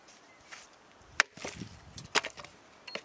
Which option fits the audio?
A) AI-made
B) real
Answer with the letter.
B